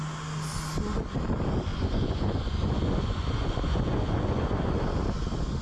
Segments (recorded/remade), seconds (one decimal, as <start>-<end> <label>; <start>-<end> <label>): 0.0-1.7 recorded; 1.7-5.0 remade; 5.0-5.6 recorded